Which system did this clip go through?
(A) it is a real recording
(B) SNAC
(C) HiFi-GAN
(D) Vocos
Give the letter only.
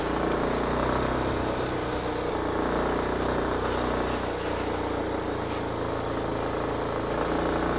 A